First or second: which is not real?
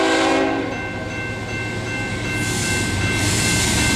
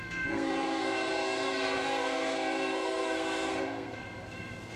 second